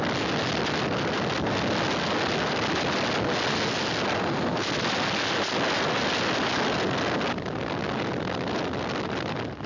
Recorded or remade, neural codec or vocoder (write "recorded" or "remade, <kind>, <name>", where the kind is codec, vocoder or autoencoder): recorded